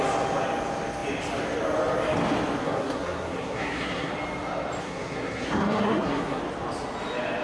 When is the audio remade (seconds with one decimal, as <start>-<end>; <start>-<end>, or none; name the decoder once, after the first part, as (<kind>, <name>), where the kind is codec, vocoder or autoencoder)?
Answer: 2.6-4.1 (codec, SNAC); 4.8-6.4

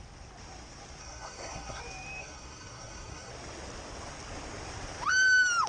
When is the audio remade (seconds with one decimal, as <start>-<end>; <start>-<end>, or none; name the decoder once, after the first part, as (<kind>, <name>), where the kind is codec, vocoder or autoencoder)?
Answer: 1.0-1.8 (codec, SNAC); 2.2-3.3

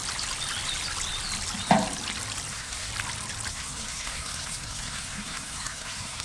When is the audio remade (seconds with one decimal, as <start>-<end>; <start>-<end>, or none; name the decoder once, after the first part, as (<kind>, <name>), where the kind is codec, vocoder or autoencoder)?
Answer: 2.5-2.9 (codec, SNAC); 3.5-6.2